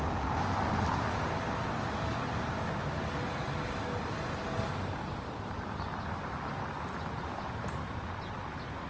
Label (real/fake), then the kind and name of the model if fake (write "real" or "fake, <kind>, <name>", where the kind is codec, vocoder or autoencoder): real